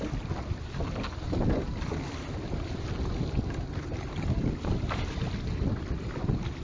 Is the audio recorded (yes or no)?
yes